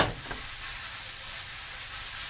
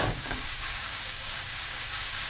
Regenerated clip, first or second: second